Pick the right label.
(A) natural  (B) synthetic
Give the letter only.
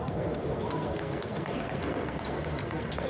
B